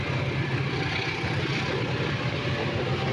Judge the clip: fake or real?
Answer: real